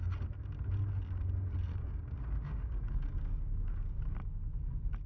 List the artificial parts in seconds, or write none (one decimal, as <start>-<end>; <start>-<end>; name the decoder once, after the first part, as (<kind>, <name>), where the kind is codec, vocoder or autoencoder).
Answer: 1.7-4.0 (codec, DAC)